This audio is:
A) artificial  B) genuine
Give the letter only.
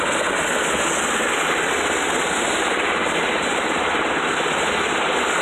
B